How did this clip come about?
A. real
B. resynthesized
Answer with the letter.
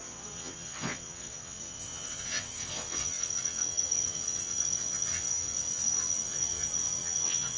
B